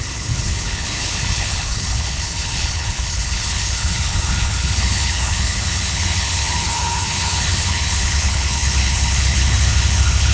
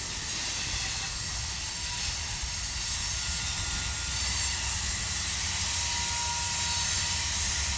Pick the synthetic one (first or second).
first